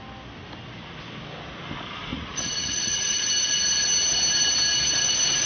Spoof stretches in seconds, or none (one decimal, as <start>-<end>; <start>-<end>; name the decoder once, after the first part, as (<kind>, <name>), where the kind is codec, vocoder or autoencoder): 2.1-3.2 (vocoder, Vocos)